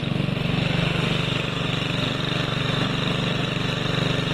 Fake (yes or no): no